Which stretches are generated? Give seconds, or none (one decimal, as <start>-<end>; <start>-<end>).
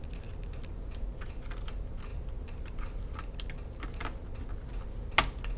none